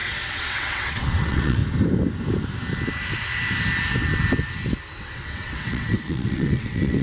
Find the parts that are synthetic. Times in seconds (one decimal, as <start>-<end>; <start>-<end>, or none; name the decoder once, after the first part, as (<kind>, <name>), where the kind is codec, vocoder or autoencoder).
0.0-1.6 (vocoder, WaveNeXt); 5.0-7.0